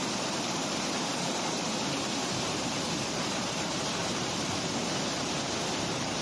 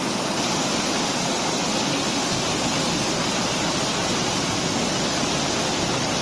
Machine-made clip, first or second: first